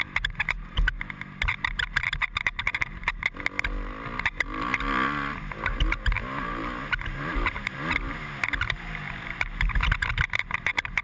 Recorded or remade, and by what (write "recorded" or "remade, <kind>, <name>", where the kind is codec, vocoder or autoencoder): recorded